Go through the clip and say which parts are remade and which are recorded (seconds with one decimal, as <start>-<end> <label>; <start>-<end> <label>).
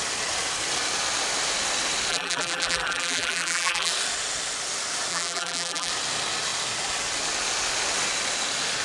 0.0-2.1 recorded; 2.1-3.9 remade; 3.9-5.1 recorded; 5.1-5.9 remade; 5.9-8.8 recorded